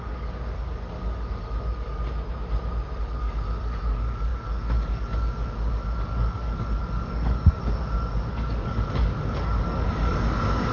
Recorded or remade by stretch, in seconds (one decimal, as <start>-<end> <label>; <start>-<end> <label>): 0.0-2.0 remade; 2.0-3.0 recorded; 3.0-7.6 remade; 7.6-8.3 recorded; 8.3-10.7 remade